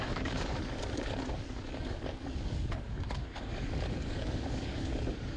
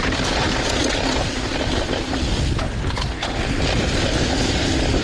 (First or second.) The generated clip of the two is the first